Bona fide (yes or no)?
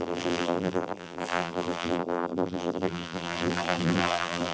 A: no